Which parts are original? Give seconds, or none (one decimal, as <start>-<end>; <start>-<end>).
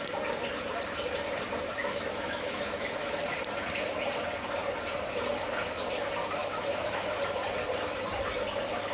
0.0-1.8; 3.2-6.4; 7.2-8.9